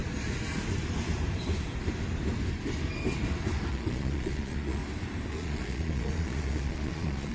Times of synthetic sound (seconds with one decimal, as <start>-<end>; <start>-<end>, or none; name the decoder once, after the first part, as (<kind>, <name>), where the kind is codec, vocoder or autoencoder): 3.7-4.8 (vocoder, Vocos); 5.3-7.3